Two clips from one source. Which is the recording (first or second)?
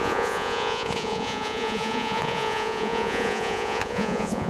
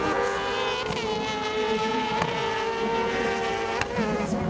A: second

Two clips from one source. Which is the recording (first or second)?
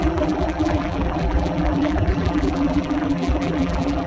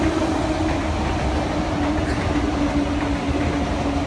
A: second